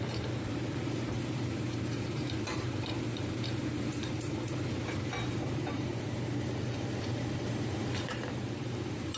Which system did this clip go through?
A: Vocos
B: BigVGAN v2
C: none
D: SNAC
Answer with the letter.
B